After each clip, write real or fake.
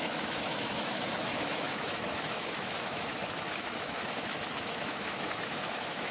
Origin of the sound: fake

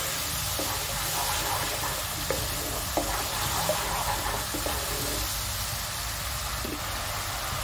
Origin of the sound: real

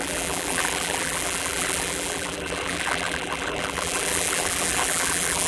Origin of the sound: fake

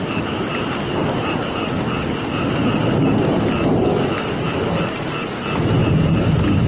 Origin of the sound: real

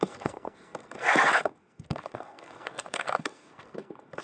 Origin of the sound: fake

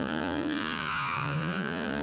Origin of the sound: fake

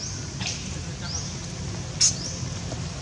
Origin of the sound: real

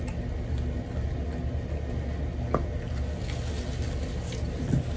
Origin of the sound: real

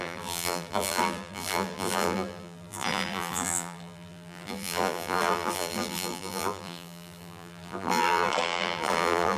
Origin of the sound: fake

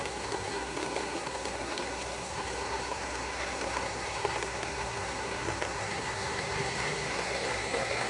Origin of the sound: fake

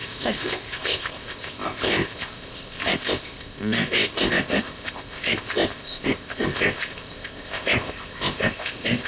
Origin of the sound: fake